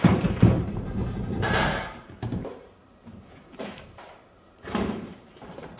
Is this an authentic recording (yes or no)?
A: no